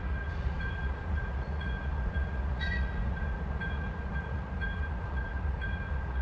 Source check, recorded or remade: remade